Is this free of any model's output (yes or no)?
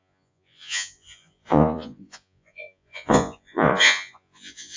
no